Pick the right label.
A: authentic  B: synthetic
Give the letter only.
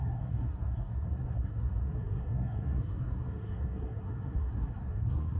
B